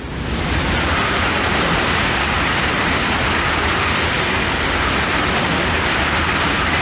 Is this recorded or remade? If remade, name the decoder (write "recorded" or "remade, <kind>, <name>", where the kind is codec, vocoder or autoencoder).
recorded